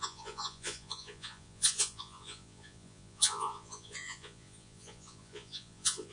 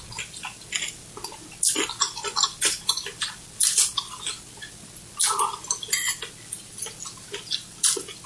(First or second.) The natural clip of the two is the second